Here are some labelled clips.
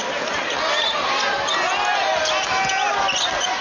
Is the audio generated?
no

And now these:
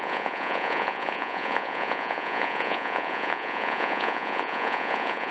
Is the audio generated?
yes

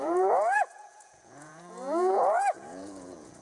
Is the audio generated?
yes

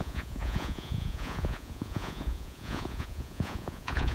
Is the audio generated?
yes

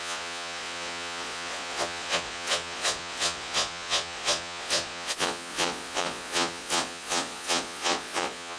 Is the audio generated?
yes